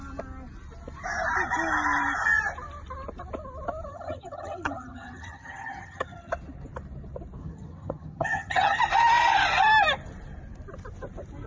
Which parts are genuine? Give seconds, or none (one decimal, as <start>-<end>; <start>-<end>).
0.0-3.9; 6.3-7.4; 8.8-11.5